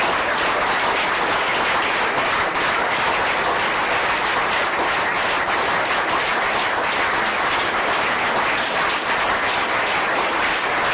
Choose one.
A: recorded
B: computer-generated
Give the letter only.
A